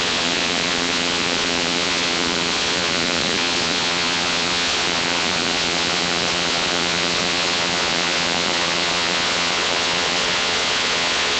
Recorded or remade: remade